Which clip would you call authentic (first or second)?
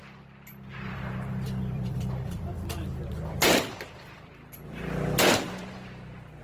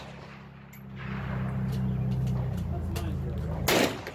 second